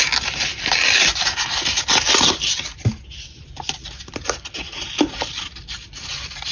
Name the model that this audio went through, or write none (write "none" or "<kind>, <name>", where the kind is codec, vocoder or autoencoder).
none